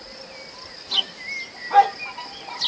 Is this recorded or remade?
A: recorded